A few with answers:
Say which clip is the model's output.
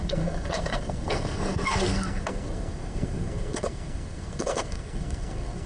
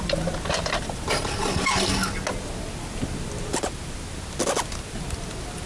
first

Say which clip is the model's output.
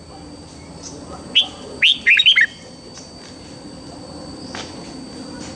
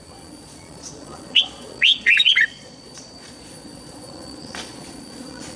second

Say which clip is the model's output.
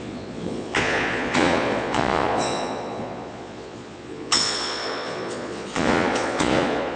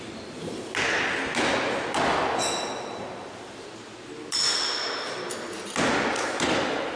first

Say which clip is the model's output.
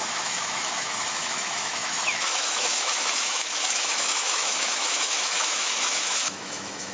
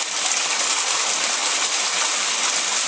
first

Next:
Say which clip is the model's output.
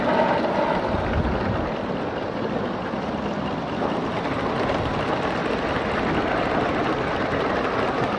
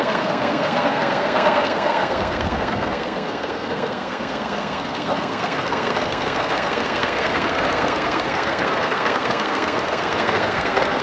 second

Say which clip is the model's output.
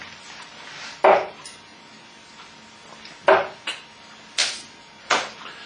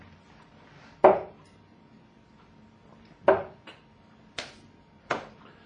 second